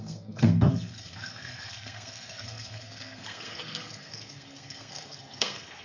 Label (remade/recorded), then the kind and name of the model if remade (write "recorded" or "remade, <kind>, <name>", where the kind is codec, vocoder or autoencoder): remade, codec, SNAC